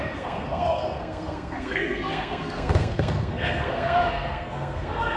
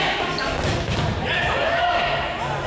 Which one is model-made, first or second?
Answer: first